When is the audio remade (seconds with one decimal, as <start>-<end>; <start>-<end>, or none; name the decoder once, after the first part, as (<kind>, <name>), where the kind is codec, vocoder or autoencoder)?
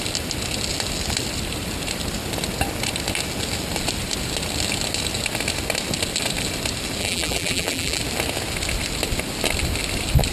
7.0-8.0 (vocoder, BigVGAN v2)